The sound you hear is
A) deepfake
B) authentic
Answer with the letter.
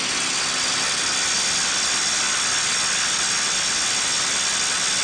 B